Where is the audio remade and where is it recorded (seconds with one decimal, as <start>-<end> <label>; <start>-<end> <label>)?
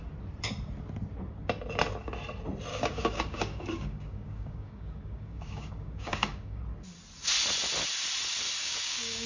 0.0-2.7 recorded; 2.7-6.6 remade; 6.6-8.6 recorded; 8.6-9.3 remade